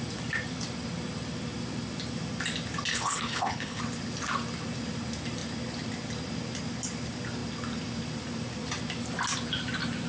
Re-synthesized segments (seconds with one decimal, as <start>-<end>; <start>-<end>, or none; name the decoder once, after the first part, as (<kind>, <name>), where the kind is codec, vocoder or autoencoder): 2.9-3.8 (codec, HILCodec)